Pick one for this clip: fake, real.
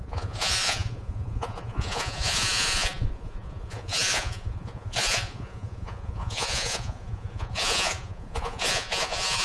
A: fake